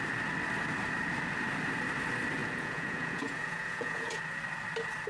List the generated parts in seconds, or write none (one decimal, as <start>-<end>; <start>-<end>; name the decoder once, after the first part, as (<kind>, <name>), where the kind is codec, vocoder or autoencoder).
2.4-4.2 (vocoder, Vocos)